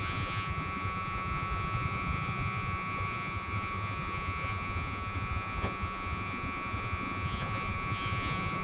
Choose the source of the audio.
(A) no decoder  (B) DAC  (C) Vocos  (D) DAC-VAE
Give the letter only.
C